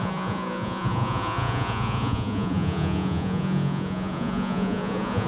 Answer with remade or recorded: remade